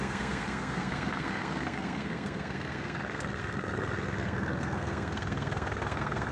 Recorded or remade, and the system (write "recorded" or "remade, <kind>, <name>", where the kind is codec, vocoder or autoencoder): remade, codec, SNAC